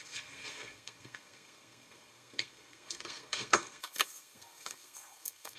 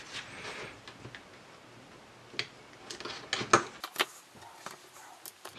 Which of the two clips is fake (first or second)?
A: first